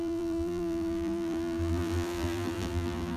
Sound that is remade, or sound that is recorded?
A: remade